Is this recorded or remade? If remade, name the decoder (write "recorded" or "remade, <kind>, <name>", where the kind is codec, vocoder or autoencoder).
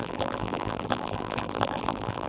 remade, vocoder, BigVGAN v2